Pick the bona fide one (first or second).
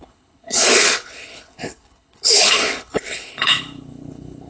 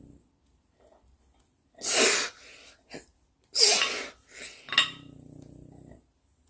second